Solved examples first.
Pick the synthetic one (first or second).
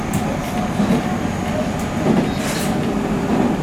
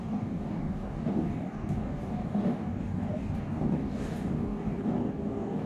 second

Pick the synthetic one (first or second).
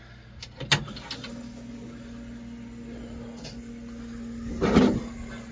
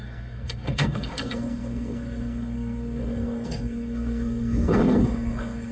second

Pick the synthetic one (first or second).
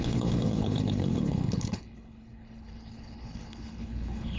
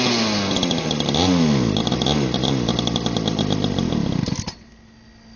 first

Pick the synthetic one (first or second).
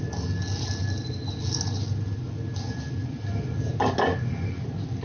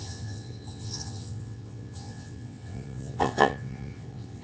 second